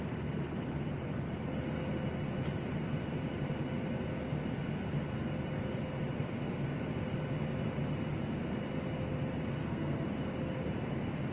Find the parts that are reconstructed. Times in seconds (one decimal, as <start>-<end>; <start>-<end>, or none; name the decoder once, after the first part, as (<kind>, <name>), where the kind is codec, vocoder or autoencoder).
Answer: 9.6-10.2 (codec, SNAC)